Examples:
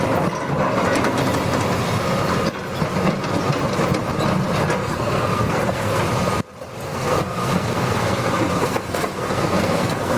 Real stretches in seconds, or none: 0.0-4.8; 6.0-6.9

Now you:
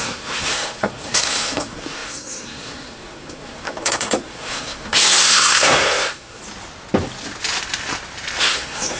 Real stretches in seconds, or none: 6.4-8.4

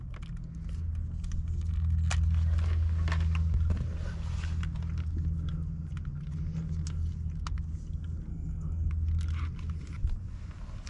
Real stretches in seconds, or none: 0.0-8.3; 8.9-10.9